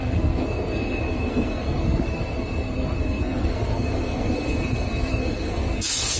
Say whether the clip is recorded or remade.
remade